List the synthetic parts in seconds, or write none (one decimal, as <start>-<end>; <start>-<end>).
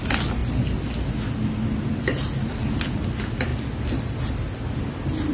none